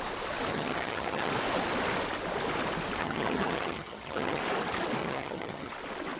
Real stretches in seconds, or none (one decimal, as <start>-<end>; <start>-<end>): 0.0-0.5; 1.3-3.0; 4.4-5.0; 5.7-6.2